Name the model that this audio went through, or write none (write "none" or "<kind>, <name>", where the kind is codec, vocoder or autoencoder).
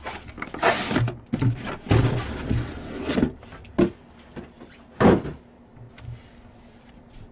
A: none